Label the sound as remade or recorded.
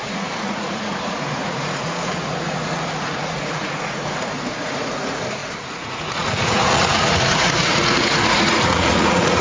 remade